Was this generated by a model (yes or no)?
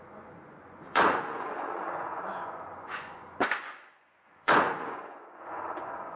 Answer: yes